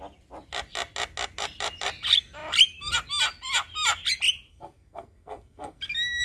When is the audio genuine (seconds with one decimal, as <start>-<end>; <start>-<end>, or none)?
0.0-4.5; 5.8-6.2

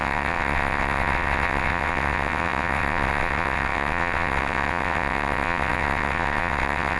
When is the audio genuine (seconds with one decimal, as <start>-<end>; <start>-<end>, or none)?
none

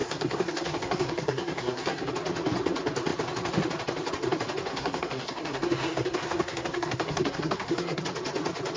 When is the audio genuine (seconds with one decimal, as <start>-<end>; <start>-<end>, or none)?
2.1-4.7; 8.0-8.8

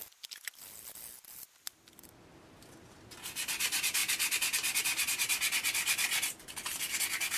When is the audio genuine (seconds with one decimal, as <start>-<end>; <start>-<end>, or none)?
0.0-7.4

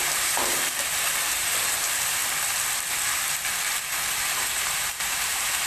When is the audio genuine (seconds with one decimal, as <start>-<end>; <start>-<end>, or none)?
2.2-3.9

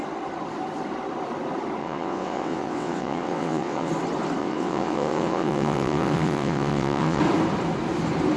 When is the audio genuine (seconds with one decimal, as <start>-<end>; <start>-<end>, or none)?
0.0-1.8; 3.9-4.4; 7.2-8.4